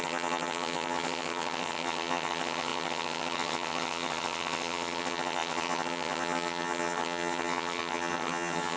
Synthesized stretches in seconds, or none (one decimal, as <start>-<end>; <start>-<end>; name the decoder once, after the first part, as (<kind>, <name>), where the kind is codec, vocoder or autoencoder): 0.0-8.8 (vocoder, HiFi-GAN)